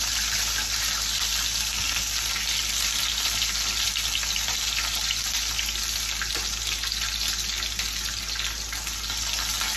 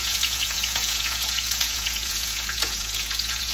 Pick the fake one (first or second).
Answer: second